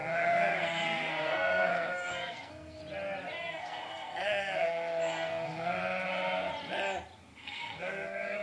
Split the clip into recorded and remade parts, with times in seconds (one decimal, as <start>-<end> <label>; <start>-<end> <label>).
0.0-2.8 remade; 2.8-3.4 recorded; 3.4-5.8 remade; 5.8-7.3 recorded; 7.3-8.4 remade